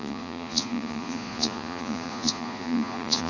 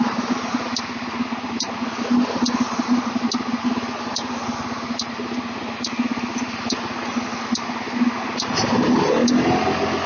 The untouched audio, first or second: second